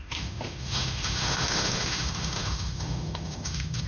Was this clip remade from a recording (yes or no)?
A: yes